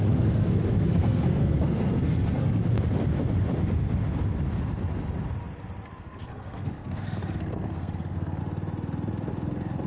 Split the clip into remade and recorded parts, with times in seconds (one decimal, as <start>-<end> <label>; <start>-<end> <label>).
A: 0.0-2.6 remade; 2.6-6.0 recorded; 6.0-8.4 remade; 8.4-9.9 recorded